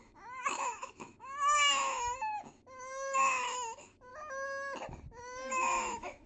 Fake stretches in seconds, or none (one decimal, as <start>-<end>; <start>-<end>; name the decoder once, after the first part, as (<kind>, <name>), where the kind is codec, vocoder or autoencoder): 0.0-4.1 (autoencoder, DAC-VAE); 5.2-6.3